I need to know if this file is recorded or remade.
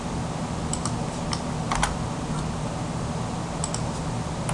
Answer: recorded